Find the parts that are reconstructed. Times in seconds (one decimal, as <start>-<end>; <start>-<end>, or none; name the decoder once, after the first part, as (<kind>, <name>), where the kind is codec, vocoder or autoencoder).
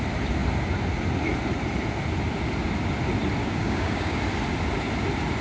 3.4-4.2 (codec, DAC)